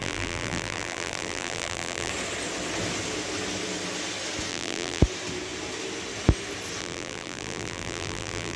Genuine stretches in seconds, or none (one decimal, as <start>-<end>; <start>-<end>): 2.1-4.5; 5.0-6.8